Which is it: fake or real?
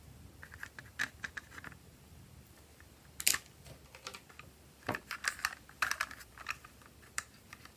real